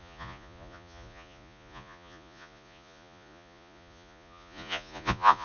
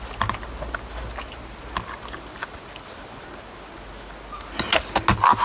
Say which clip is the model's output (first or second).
first